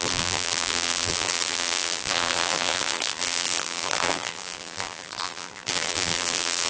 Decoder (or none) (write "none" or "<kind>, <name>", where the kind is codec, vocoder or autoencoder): vocoder, BigVGAN v2